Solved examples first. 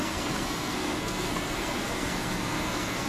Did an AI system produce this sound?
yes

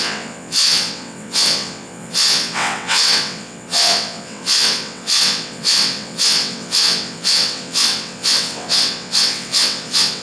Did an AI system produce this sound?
yes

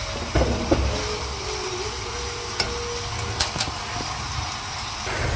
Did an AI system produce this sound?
no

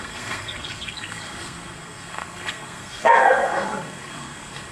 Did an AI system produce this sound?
yes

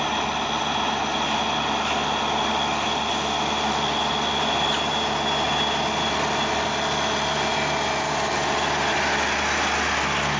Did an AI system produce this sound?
no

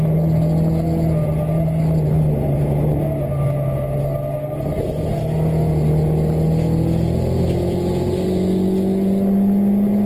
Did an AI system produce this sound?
no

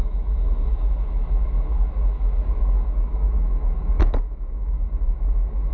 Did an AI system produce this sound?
yes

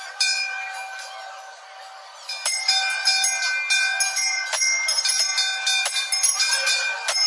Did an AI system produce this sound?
no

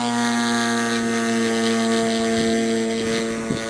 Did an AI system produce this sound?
no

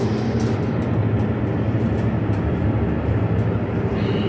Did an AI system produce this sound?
yes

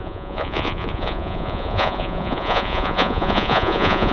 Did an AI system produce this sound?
yes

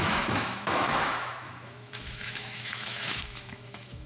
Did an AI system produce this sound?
yes